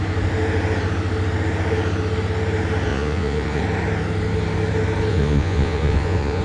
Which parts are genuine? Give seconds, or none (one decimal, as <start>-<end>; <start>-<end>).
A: 0.0-2.9; 3.6-5.1